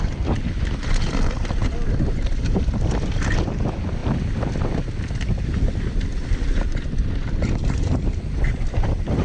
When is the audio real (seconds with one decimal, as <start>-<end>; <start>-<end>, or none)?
1.6-2.1; 4.0-5.0